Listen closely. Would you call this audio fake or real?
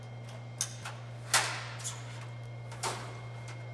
real